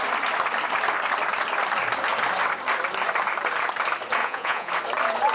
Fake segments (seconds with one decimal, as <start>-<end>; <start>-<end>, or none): 4.2-4.7

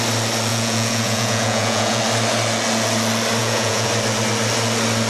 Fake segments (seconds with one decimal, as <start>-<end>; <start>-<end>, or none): 0.5-2.0; 3.4-3.9

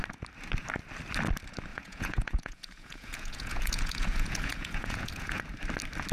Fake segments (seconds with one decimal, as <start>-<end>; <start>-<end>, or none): 1.7-5.4

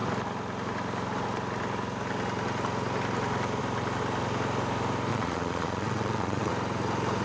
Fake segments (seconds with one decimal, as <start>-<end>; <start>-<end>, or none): 5.1-6.5